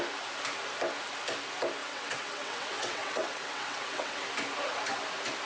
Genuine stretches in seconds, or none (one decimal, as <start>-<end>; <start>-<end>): 0.0-1.8; 4.2-5.5